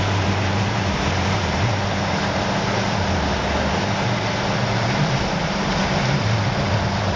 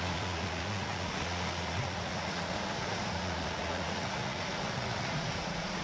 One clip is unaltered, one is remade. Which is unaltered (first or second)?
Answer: first